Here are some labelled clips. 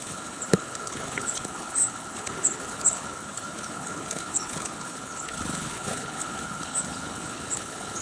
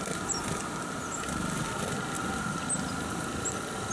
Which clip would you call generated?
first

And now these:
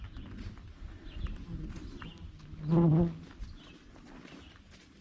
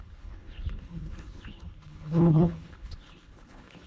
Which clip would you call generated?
second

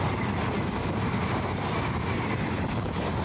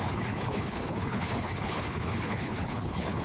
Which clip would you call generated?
second